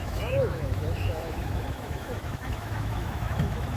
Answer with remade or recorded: remade